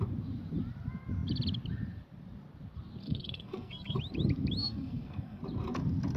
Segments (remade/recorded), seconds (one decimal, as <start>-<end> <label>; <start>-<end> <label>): 0.0-3.0 recorded; 3.0-4.0 remade; 4.0-4.6 recorded; 4.6-5.4 remade; 5.4-6.2 recorded

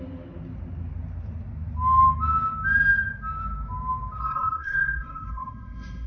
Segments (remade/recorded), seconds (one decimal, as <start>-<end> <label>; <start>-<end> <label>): 0.0-4.2 recorded; 4.2-6.1 remade